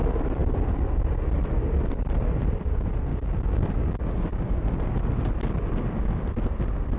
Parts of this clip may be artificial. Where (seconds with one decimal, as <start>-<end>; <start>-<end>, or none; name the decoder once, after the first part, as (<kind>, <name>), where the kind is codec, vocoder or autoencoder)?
3.1-4.9 (codec, DAC)